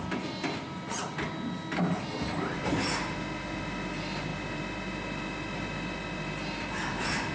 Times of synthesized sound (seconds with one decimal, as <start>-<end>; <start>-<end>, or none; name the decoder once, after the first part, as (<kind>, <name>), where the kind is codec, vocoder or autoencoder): none

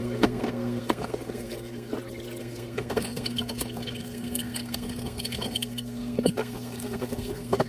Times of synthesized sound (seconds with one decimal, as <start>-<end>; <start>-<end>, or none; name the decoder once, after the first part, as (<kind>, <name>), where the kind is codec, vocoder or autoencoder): 0.0-1.9 (codec, SNAC); 2.4-7.7

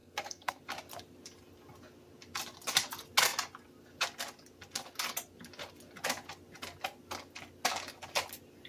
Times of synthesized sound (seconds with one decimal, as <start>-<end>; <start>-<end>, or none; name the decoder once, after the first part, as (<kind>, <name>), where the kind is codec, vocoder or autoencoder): 0.0-0.6 (codec, SNAC)

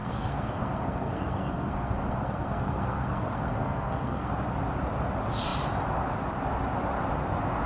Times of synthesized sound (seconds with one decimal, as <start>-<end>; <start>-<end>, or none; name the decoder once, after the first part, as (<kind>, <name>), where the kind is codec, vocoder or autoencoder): 0.0-4.3 (codec, SNAC)